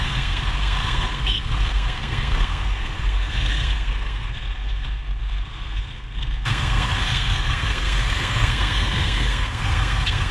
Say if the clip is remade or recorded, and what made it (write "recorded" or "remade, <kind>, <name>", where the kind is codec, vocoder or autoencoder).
remade, codec, SNAC